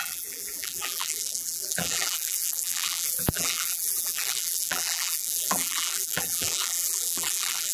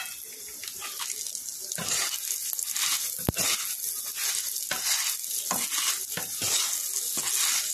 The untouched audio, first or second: second